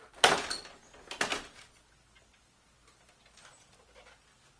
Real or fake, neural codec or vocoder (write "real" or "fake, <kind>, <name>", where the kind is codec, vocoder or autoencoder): real